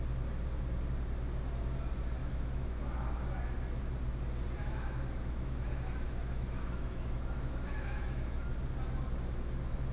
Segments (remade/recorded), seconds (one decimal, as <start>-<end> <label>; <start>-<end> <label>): 0.0-2.2 recorded; 2.2-2.8 remade; 2.8-4.6 recorded; 4.6-8.5 remade; 8.5-9.9 recorded